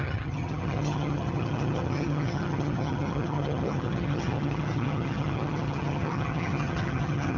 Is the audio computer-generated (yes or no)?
yes